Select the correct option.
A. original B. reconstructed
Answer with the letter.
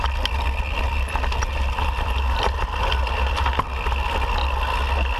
A